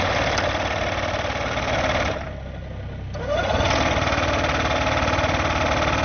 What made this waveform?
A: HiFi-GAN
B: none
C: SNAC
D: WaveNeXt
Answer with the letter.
B